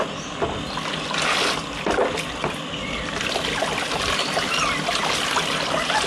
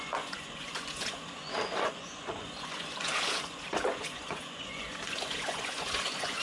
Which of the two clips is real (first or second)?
first